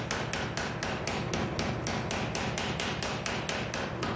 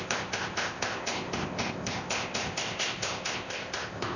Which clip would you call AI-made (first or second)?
second